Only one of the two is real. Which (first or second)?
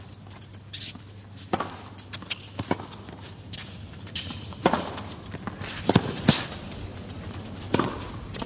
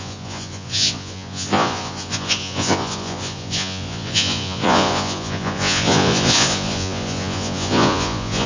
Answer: first